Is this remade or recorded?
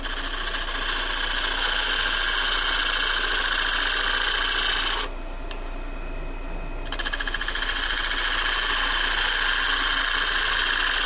recorded